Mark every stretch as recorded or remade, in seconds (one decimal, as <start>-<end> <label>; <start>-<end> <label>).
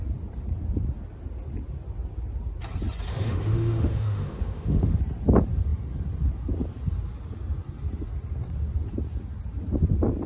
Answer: 0.0-3.1 recorded; 3.1-5.0 remade; 5.0-10.3 recorded